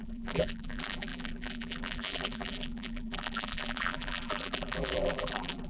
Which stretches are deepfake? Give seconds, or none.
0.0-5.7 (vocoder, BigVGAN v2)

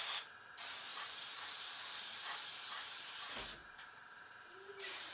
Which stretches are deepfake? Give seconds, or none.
0.9-2.3 (vocoder, BigVGAN v2); 3.6-5.1

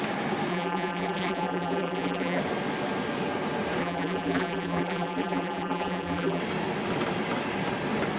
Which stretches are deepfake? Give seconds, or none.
0.5-2.4 (vocoder, BigVGAN v2); 3.8-6.4

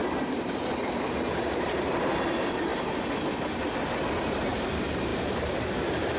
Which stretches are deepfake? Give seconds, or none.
1.4-2.7 (vocoder, BigVGAN v2); 4.3-6.2

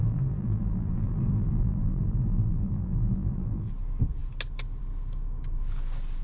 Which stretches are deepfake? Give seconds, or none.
0.0-3.7 (vocoder, BigVGAN v2)